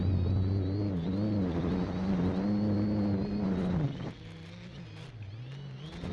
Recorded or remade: recorded